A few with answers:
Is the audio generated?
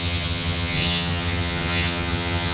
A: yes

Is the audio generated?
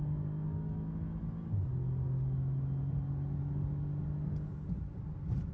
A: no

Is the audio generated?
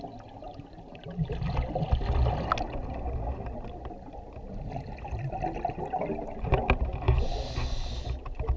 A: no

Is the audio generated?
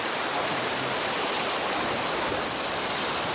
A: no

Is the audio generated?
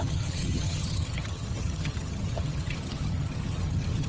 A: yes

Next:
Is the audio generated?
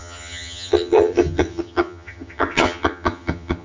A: yes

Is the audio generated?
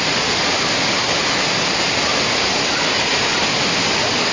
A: no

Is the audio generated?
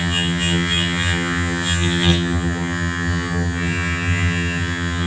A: yes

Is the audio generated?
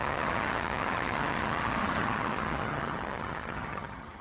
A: yes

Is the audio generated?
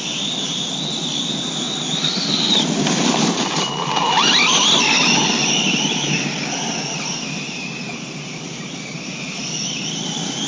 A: no